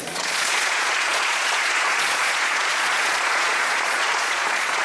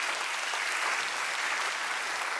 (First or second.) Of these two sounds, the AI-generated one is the first